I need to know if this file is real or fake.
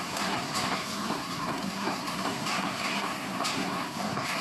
fake